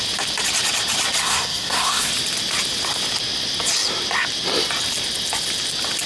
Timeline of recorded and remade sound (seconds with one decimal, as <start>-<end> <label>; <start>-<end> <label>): 0.0-1.2 recorded; 1.2-2.1 remade; 2.1-6.1 recorded